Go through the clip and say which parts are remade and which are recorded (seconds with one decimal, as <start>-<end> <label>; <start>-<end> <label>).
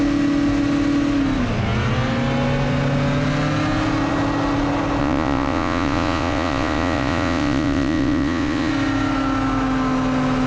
0.0-5.0 recorded; 5.0-8.7 remade; 8.7-10.5 recorded